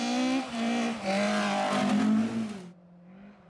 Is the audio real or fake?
real